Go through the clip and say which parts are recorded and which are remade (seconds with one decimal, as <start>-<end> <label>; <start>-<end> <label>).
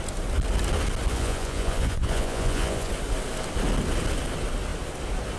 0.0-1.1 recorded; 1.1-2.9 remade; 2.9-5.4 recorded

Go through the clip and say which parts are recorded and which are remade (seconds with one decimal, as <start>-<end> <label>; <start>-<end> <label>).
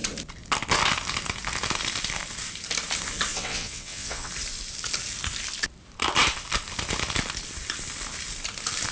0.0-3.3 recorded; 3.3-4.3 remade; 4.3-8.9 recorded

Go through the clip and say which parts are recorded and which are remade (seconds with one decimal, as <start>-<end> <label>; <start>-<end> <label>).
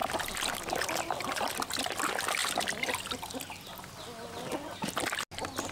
0.0-5.7 recorded